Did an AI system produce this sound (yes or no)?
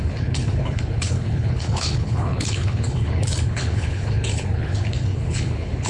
yes